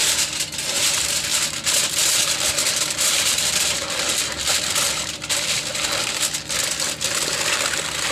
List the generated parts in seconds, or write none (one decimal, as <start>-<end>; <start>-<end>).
2.6-5.7